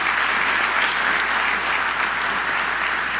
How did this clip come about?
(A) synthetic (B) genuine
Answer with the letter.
B